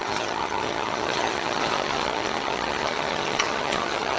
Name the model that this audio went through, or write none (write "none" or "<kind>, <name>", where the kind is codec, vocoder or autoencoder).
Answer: vocoder, HiFi-GAN